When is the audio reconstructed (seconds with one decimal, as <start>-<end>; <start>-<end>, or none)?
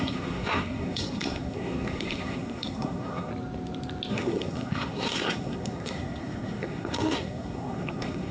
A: 0.0-3.3; 4.1-8.3